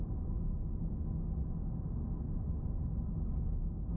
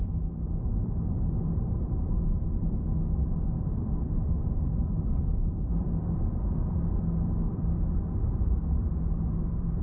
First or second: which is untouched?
first